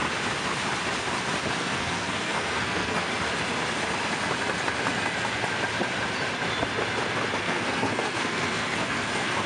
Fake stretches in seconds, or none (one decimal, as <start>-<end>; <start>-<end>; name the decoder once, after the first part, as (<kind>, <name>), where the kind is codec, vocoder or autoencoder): 1.5-3.1 (codec, SNAC); 7.4-9.5